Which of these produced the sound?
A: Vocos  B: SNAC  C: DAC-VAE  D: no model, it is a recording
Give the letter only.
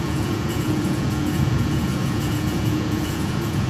A